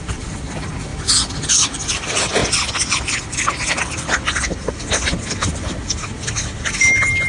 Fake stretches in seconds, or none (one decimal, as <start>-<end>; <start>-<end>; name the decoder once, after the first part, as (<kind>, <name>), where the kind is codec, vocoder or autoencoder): 0.0-2.4 (vocoder, BigVGAN v2); 3.0-7.3